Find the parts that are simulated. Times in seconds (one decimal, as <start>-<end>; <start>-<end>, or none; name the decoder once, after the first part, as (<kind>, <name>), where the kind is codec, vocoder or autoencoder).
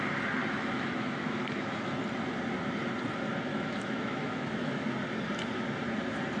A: 0.4-2.0 (autoencoder, DAC-VAE); 3.5-4.9